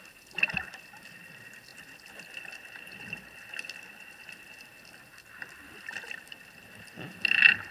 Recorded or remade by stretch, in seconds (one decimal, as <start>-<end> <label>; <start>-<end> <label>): 0.0-7.7 recorded